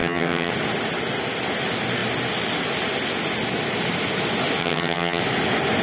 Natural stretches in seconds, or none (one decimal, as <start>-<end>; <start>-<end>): 0.5-4.6; 5.2-5.8